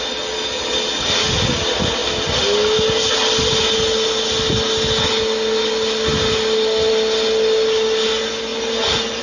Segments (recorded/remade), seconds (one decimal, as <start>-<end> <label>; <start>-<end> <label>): 0.0-9.2 recorded